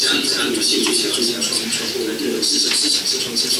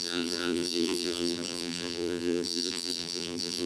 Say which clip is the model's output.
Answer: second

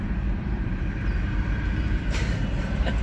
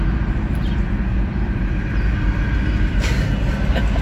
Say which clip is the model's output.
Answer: first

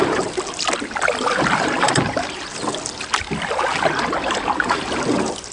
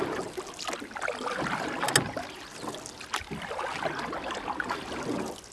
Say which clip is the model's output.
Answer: first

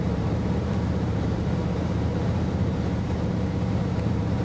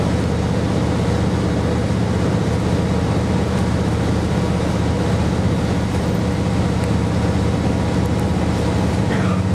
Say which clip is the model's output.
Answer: first